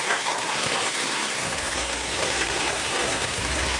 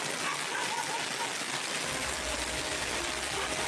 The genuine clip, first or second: second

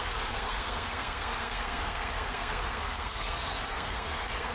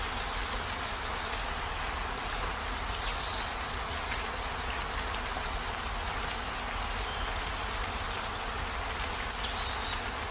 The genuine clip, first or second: second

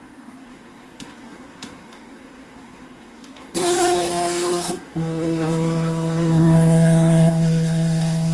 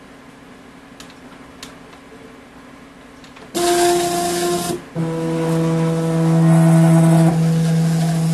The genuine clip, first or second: second